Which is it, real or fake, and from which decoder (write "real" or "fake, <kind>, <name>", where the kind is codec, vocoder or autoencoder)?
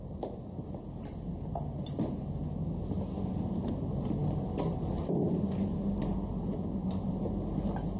real